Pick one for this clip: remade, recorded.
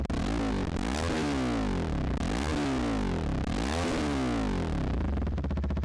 recorded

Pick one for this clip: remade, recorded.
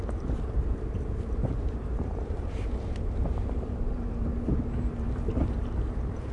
remade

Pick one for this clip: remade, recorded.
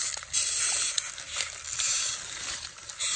recorded